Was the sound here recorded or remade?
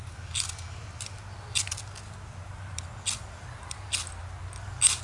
recorded